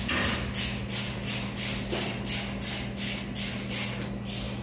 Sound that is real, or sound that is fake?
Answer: real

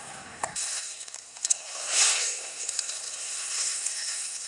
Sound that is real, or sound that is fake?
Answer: fake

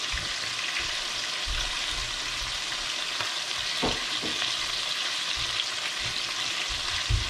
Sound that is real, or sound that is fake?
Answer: real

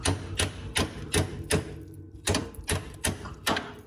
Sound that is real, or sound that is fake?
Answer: fake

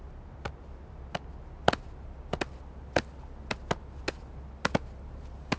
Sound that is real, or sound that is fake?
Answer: real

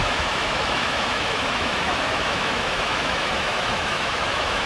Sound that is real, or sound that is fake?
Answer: fake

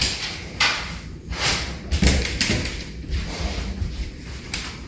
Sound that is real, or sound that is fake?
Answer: fake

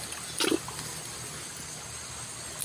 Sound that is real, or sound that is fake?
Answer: real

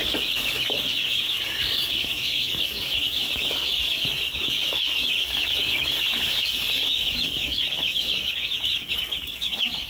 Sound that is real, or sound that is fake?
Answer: fake